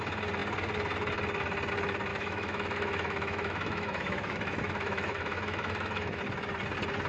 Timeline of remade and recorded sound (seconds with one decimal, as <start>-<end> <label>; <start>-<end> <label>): 0.0-2.1 recorded; 2.1-6.2 remade; 6.2-7.1 recorded